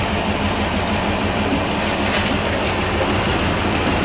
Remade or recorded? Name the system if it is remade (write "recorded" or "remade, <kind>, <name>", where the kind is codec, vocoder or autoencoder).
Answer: remade, vocoder, BigVGAN v2